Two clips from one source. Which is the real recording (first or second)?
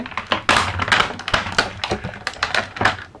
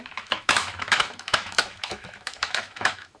first